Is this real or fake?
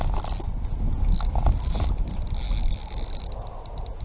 real